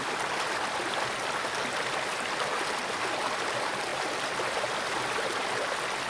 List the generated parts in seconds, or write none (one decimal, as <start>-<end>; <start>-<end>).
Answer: none